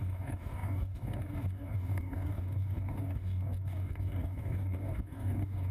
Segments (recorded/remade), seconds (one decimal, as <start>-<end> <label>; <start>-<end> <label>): 0.0-5.7 remade